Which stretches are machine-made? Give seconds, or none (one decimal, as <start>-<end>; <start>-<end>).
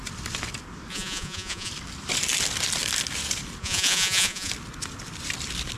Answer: 0.9-1.7; 3.6-4.5